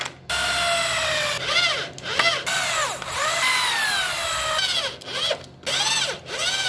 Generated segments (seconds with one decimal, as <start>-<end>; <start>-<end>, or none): none